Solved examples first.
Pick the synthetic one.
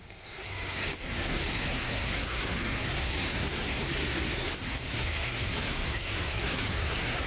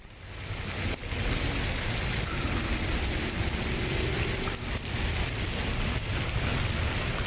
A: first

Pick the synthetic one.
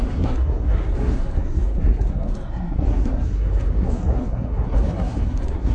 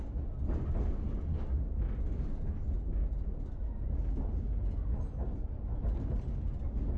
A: first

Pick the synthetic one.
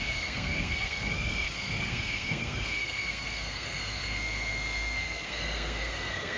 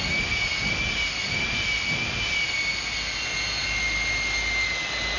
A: first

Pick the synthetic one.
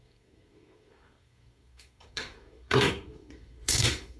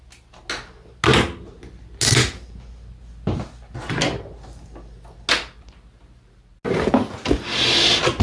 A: first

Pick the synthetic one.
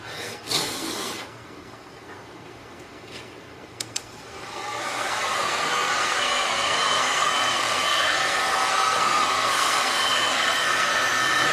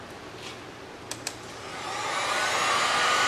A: first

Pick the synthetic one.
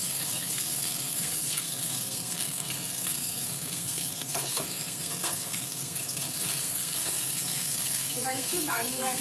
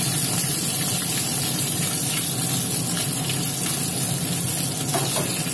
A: first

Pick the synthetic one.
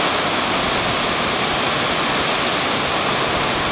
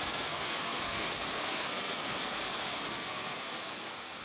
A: second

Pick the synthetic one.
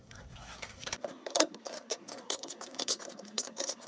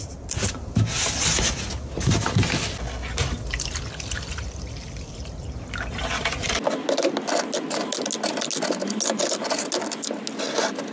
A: first